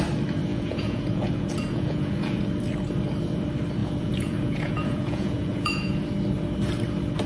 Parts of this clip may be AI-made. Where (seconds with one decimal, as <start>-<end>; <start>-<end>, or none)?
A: 0.5-2.4; 3.8-5.9